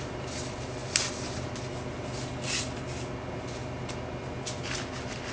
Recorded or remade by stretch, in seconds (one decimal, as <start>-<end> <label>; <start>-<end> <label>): 0.0-5.3 recorded